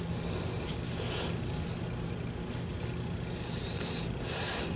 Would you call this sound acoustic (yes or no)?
yes